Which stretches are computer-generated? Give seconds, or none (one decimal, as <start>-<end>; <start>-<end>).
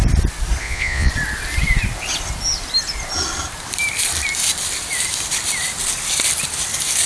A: 0.6-1.1